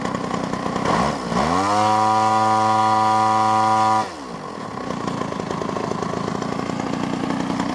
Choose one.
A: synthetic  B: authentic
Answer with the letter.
B